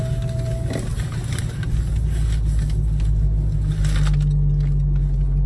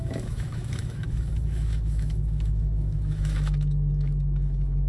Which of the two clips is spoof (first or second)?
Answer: second